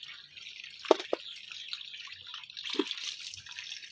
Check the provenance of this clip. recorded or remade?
recorded